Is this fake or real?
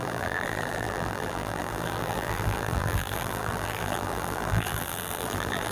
fake